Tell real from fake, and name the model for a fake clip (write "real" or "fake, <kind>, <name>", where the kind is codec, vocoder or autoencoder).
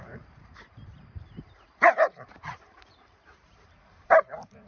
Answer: fake, vocoder, BigVGAN v2